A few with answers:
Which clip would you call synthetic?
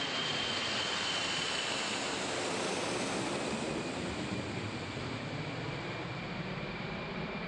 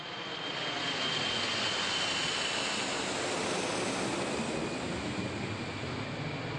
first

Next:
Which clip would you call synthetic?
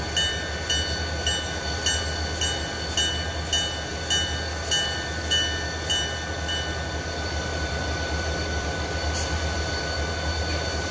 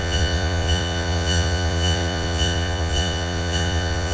second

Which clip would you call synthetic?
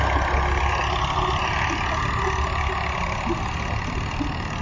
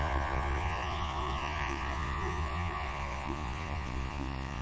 second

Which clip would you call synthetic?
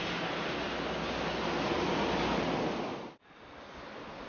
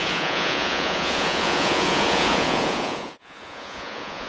second